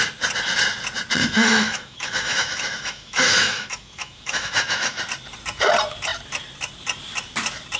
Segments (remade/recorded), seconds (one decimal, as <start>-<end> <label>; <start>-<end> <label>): 0.0-1.2 recorded; 1.2-5.0 remade; 5.0-7.8 recorded